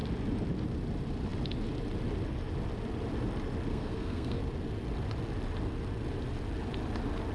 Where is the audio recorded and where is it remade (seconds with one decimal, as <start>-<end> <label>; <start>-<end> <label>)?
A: 0.0-3.7 recorded; 3.7-4.4 remade; 4.4-7.3 recorded